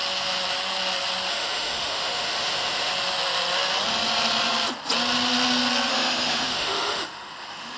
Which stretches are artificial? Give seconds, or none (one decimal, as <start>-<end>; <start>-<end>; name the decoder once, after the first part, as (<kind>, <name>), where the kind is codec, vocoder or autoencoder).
1.3-2.9 (autoencoder, DAC-VAE); 5.9-7.8